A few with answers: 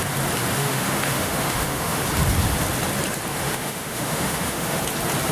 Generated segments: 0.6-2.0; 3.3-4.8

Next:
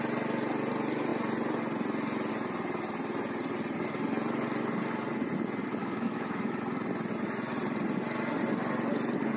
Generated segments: 5.8-6.6

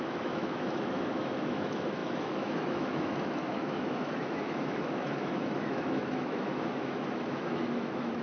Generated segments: 0.0-8.2